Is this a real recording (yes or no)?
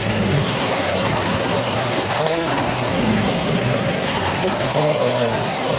no